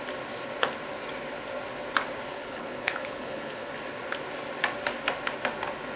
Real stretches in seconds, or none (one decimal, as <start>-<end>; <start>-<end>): 0.0-2.3; 3.7-6.0